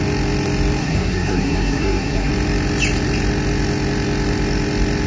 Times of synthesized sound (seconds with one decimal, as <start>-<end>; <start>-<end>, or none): 0.8-2.3